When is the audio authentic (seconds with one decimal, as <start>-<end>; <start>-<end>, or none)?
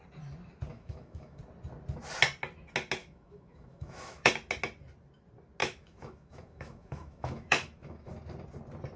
0.0-0.7; 1.4-3.0; 4.3-5.6; 8.1-9.0